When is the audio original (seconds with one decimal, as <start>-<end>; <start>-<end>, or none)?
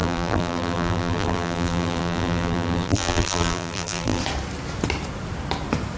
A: 4.2-6.0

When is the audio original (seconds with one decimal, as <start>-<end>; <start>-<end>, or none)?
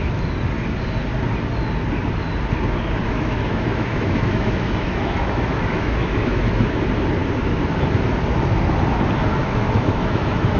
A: 0.0-3.0; 6.8-9.4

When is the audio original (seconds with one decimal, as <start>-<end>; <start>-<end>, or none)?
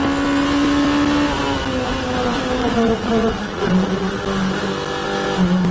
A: 0.0-2.6; 4.2-5.7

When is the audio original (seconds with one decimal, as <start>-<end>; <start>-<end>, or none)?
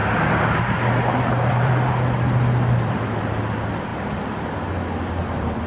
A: 3.9-5.7